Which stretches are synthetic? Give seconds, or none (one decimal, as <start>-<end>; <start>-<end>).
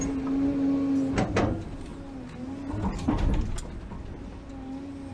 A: none